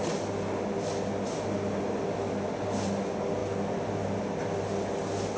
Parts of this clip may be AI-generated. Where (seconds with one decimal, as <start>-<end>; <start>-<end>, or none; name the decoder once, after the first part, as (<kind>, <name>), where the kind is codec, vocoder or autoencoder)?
none